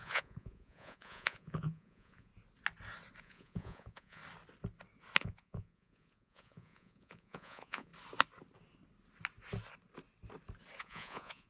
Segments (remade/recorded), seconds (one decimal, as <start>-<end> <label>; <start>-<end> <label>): 0.0-2.3 remade; 2.3-3.2 recorded; 3.2-4.2 remade; 4.2-5.2 recorded; 5.2-7.9 remade; 7.9-10.8 recorded; 10.8-11.5 remade